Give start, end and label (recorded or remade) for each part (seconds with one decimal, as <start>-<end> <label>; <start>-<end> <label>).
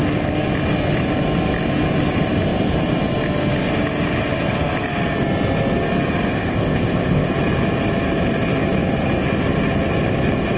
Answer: 0.0-6.3 recorded; 6.3-7.3 remade; 7.3-10.6 recorded